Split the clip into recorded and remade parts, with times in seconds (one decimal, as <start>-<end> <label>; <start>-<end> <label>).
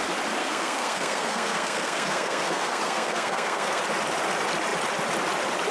0.0-0.4 recorded; 0.4-3.8 remade; 3.8-5.7 recorded